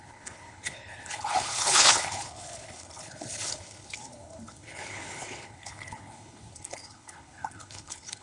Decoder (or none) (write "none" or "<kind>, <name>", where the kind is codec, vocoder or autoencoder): codec, HILCodec